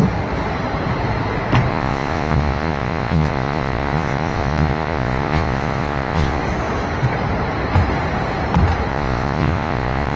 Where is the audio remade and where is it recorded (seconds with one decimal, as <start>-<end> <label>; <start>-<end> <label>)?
0.0-1.7 recorded; 1.7-6.4 remade; 6.4-8.9 recorded; 8.9-10.2 remade

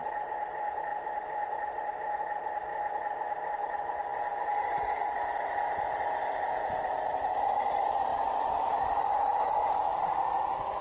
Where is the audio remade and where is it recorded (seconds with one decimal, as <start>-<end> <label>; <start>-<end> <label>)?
0.0-2.7 remade; 2.7-3.5 recorded; 3.5-4.1 remade; 4.1-6.8 recorded; 6.8-8.1 remade; 8.1-9.6 recorded; 9.6-10.8 remade

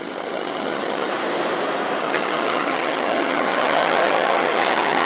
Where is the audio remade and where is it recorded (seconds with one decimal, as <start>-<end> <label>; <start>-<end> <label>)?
0.0-1.1 remade; 1.1-2.0 recorded; 2.0-5.0 remade